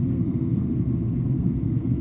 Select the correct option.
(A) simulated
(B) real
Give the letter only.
A